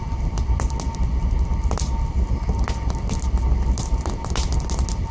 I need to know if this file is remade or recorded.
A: recorded